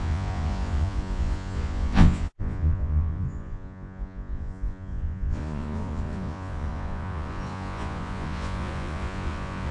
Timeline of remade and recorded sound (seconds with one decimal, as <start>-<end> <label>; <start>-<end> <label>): 0.0-9.7 remade